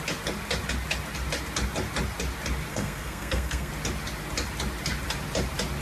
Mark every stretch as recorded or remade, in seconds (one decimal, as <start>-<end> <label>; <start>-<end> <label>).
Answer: 0.0-2.7 recorded; 2.7-3.7 remade; 3.7-5.8 recorded